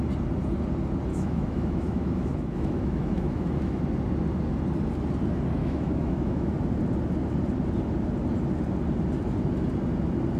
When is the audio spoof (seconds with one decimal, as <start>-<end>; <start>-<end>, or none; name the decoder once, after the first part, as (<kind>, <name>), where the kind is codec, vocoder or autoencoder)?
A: 1.1-3.8 (autoencoder, DAC-VAE); 5.6-6.5